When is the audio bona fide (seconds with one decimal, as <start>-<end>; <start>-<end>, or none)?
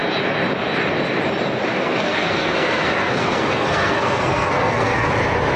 0.0-1.7; 5.1-5.6